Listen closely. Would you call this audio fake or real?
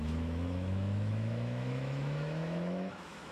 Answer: fake